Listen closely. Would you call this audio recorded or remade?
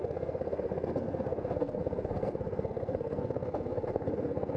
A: remade